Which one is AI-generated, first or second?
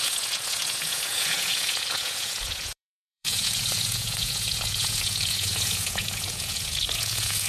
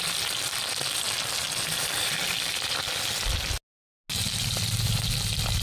first